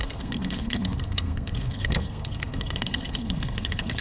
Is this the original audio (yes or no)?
no